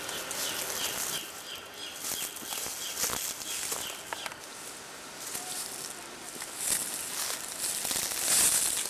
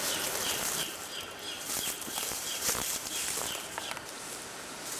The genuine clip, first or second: first